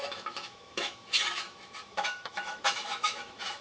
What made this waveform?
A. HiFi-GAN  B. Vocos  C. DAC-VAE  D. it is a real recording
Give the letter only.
C